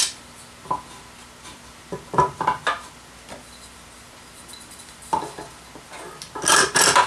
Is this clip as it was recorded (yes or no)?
yes